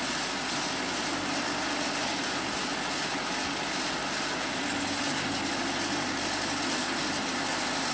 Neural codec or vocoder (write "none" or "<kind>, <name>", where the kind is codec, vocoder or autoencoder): none